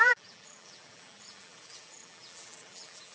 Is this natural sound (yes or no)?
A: no